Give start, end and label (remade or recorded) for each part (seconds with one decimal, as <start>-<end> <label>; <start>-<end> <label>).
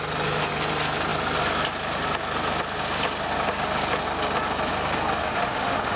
0.0-5.2 recorded; 5.2-6.0 remade